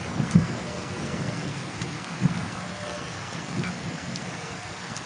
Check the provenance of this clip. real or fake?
fake